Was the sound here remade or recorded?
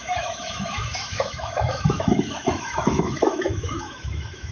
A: remade